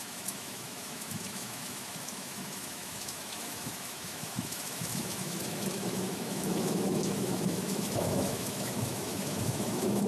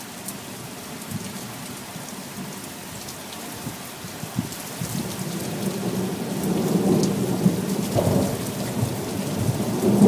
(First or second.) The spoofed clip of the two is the first